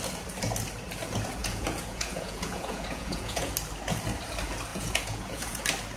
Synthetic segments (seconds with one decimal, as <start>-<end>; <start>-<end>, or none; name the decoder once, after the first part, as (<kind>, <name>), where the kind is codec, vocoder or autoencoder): 1.4-3.5 (vocoder, Vocos); 4.7-5.6